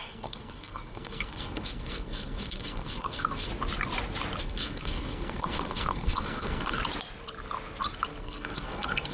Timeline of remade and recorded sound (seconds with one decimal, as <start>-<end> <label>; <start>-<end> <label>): 0.0-3.5 remade; 3.5-4.4 recorded; 4.4-6.8 remade; 6.8-8.2 recorded; 8.2-9.1 remade